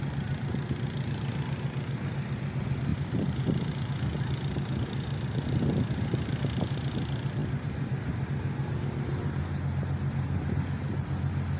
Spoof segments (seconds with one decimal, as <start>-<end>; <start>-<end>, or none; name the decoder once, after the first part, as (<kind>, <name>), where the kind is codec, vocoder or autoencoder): 2.9-3.4 (vocoder, BigVGAN v2); 7.4-8.7